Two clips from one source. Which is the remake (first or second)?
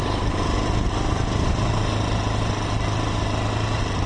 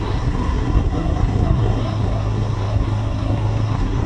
second